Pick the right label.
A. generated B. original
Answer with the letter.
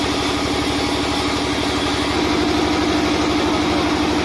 B